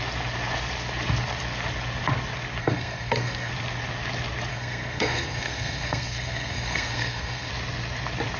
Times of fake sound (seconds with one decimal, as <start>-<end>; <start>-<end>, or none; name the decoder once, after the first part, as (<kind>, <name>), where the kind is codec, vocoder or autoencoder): 2.6-3.5 (codec, SNAC); 4.5-7.5

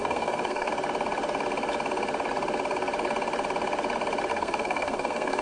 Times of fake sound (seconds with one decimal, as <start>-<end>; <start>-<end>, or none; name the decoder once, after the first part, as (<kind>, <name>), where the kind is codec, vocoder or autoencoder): 0.0-0.7 (codec, SNAC); 4.3-5.4

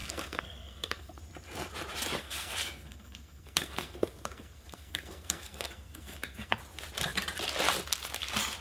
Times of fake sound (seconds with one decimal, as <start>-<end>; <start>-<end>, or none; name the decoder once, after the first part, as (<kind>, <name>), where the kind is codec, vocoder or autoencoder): 0.0-1.2 (codec, SNAC); 2.2-6.6